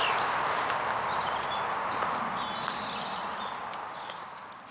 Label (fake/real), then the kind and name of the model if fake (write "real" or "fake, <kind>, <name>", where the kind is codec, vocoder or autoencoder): real